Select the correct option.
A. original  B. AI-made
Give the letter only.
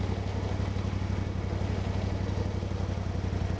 A